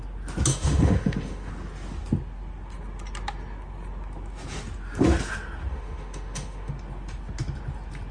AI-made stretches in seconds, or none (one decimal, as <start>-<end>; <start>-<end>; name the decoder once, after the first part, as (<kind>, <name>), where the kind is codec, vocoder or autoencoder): 0.5-1.5 (autoencoder, DAC-VAE); 5.7-6.7